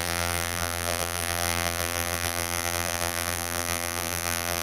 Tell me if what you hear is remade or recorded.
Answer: remade